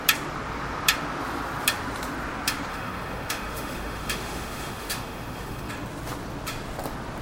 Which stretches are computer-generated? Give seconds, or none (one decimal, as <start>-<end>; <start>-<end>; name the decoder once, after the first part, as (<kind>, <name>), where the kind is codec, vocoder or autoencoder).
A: 2.7-5.7 (autoencoder, DAC-VAE)